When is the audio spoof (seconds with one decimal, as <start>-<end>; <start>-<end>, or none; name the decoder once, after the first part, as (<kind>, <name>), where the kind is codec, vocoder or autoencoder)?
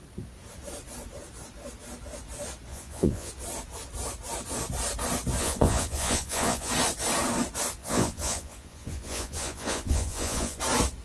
2.7-3.3 (vocoder, Vocos); 5.4-6.7; 7.8-10.6